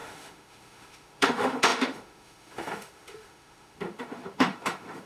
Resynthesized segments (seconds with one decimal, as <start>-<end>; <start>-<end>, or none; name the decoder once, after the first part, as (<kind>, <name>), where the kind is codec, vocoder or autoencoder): 0.0-5.1 (autoencoder, DAC-VAE)